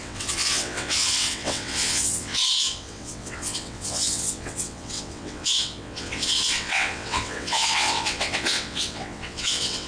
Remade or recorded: remade